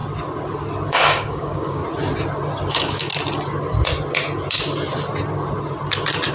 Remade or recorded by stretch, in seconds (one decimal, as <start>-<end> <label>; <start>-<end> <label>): 0.0-0.9 recorded; 0.9-1.8 remade; 1.8-2.7 recorded; 2.7-3.1 remade; 3.1-6.3 recorded